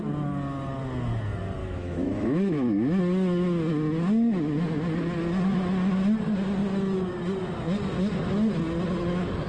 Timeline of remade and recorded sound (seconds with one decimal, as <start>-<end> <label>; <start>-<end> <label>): 0.0-1.6 recorded; 1.6-3.0 remade; 3.0-9.5 recorded